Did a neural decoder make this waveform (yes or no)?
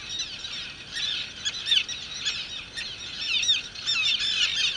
no